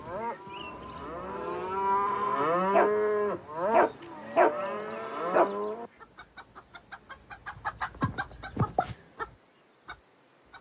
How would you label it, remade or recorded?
recorded